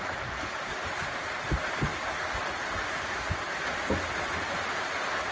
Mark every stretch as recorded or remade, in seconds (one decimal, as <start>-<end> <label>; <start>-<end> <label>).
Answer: 0.0-5.3 recorded